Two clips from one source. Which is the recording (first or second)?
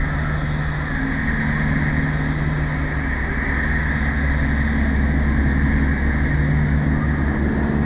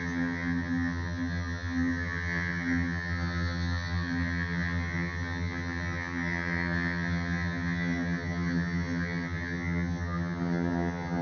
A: first